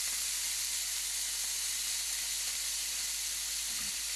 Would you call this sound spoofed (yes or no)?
no